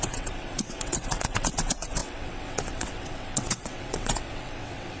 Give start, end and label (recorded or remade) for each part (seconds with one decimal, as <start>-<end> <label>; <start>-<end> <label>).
0.0-5.0 remade